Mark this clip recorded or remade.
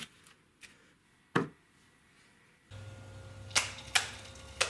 recorded